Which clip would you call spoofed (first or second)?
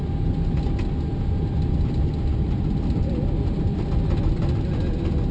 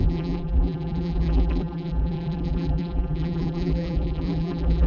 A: second